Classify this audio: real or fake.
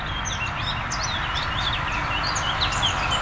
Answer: real